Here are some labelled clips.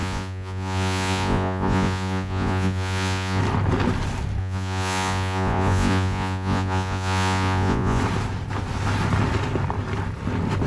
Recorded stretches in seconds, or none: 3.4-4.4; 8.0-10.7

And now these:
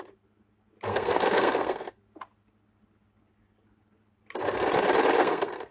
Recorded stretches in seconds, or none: 0.0-0.9; 2.0-5.2